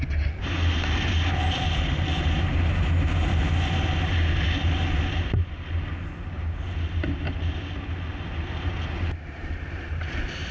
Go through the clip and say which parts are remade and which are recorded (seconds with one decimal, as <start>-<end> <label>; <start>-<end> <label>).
0.0-8.1 recorded; 8.1-10.5 remade